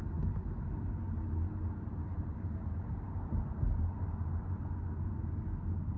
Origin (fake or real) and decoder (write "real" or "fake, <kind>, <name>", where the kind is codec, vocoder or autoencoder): real